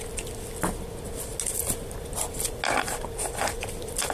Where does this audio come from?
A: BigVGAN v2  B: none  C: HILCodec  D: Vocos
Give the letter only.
B